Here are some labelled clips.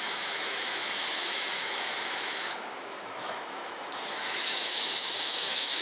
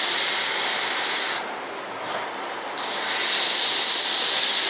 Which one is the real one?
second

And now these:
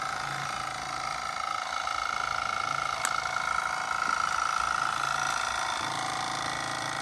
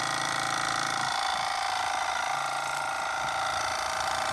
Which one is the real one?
first